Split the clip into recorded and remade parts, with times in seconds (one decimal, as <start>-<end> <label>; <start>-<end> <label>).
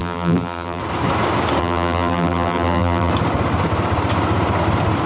0.0-0.8 remade; 0.8-1.6 recorded; 1.6-3.1 remade; 3.1-5.1 recorded